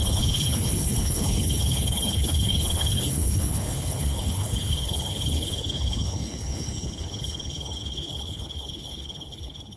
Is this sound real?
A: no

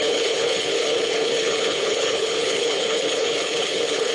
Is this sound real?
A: no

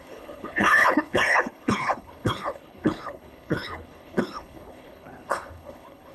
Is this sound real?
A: no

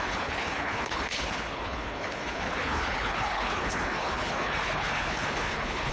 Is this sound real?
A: no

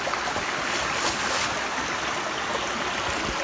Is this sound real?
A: yes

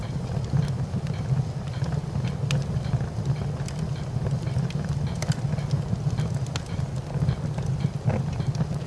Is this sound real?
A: yes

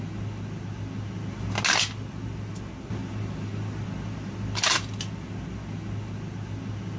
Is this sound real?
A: yes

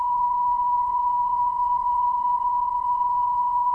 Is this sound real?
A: no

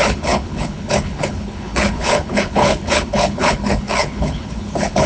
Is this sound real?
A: no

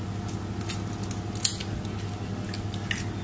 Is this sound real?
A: yes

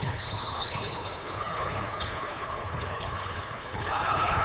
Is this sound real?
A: no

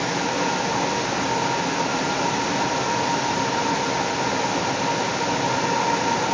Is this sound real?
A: yes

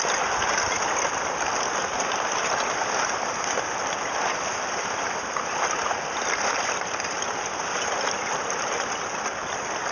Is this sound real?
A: yes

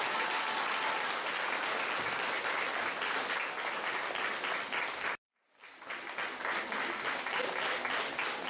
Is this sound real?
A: yes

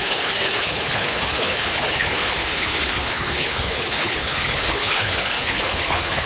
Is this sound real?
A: no